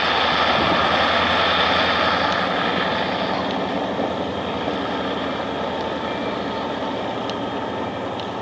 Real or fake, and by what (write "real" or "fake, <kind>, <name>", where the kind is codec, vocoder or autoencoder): real